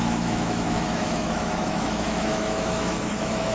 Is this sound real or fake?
fake